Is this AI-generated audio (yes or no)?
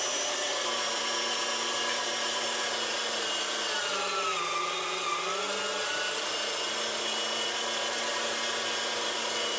no